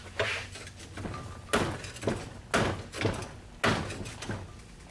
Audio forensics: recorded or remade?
recorded